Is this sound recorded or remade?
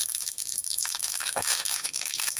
remade